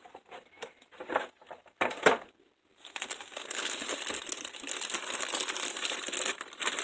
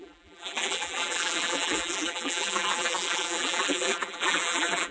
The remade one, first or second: second